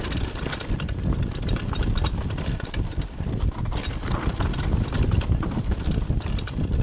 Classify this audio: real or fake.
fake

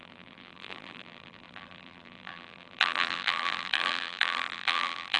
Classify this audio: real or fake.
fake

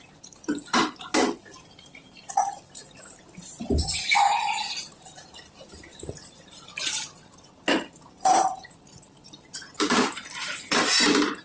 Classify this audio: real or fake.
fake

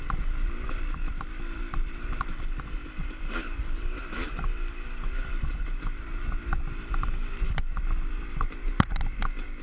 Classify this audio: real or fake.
fake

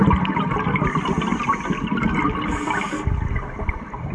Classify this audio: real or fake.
real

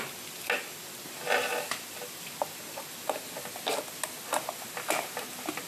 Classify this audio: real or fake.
real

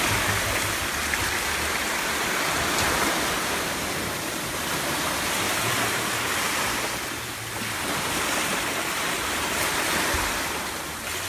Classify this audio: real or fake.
real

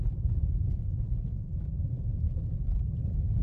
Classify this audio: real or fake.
fake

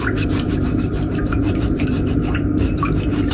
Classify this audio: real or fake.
fake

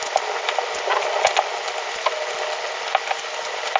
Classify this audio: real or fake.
real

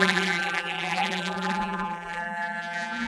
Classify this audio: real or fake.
fake